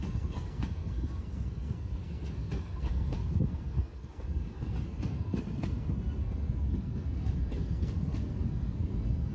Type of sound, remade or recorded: remade